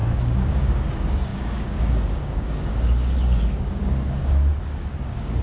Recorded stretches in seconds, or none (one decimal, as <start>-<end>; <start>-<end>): none